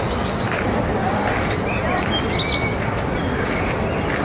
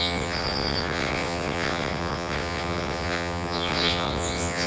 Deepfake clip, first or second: second